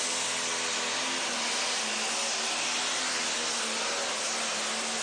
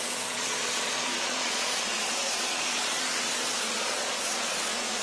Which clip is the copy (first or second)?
second